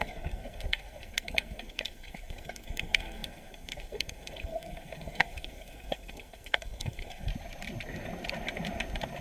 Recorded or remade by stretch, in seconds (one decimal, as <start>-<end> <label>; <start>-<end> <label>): 0.0-7.3 remade; 7.3-9.2 recorded